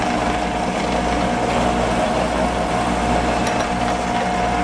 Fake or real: real